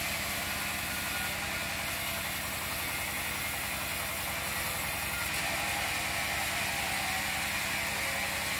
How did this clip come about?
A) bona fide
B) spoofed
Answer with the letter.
A